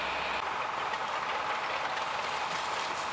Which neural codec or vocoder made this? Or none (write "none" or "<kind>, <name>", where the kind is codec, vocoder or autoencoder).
none